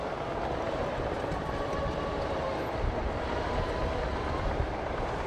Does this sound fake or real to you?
fake